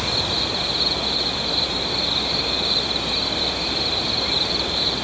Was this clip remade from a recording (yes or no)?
no